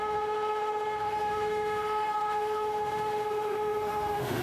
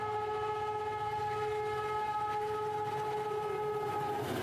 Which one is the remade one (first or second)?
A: first